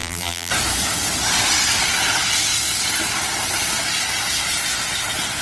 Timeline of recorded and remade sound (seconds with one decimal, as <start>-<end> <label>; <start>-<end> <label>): 0.0-0.5 remade; 0.5-5.4 recorded